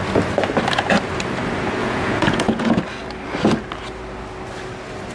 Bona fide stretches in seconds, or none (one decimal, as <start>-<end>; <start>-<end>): 0.0-1.8; 2.7-5.1